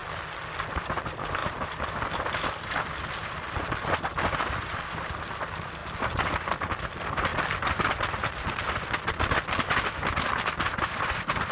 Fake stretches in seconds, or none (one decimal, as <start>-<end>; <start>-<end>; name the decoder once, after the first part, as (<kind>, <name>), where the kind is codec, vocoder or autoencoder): 0.8-1.4 (vocoder, BigVGAN v2); 5.1-11.5